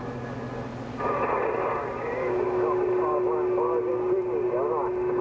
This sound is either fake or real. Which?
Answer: real